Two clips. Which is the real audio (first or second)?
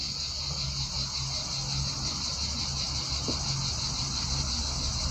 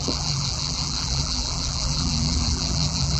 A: first